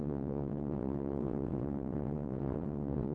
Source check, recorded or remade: remade